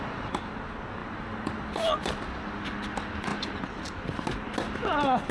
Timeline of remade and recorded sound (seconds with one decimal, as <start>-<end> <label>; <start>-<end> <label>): 0.0-1.0 recorded; 1.0-1.6 remade; 1.6-3.3 recorded; 3.3-4.1 remade; 4.1-5.3 recorded